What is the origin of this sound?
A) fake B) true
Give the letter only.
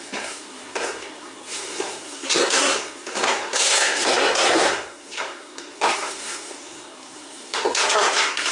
A